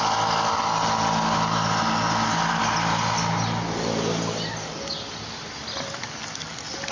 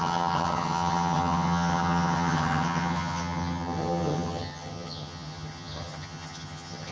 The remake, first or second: second